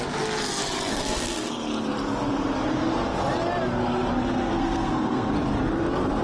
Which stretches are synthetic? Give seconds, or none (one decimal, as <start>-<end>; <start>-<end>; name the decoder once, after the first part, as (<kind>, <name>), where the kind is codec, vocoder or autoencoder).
0.9-1.5 (codec, SNAC); 4.4-5.3